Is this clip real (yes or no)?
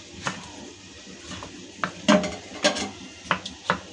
yes